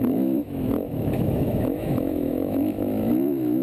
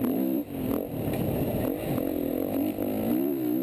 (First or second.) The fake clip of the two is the first